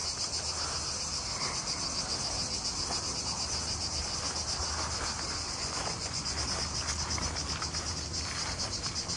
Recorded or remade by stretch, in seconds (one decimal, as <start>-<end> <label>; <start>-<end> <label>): 0.0-5.6 recorded; 5.6-6.4 remade; 6.4-9.2 recorded